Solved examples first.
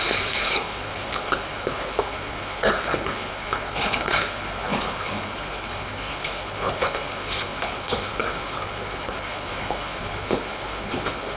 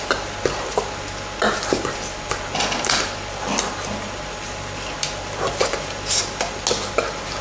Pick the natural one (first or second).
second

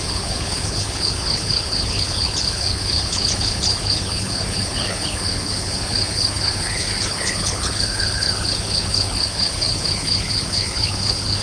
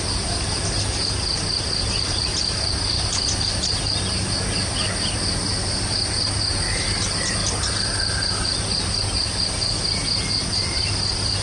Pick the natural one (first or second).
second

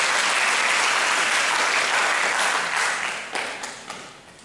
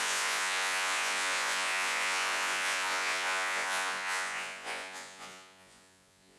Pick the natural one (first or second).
first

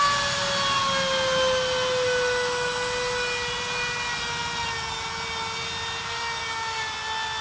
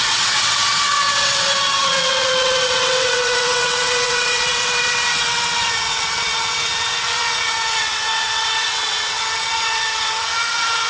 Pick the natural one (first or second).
first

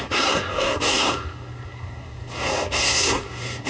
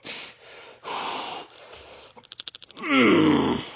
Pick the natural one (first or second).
second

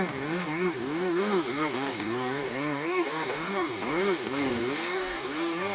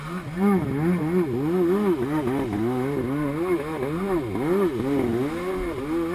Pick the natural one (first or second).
second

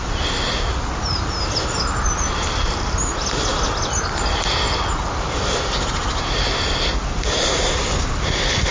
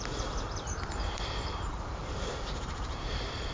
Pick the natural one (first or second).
first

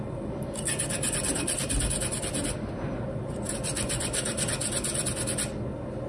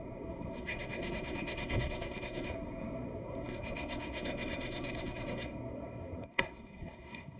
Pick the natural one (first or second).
first